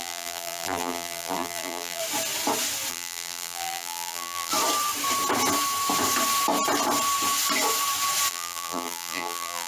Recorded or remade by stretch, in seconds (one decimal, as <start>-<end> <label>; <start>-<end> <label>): 0.0-2.0 remade; 2.0-2.9 recorded; 2.9-4.5 remade; 4.5-8.3 recorded; 8.3-9.7 remade